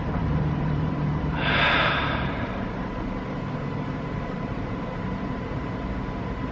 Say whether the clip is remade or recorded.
remade